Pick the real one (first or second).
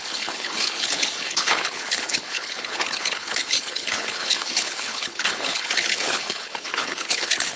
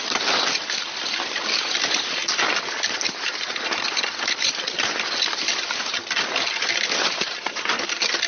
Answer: second